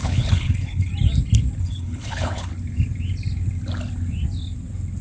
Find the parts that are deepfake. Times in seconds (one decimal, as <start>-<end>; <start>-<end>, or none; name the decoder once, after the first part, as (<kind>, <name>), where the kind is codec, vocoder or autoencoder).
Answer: 0.0-0.9 (codec, HILCodec); 1.6-2.5